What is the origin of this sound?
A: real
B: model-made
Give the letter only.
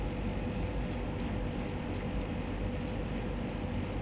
A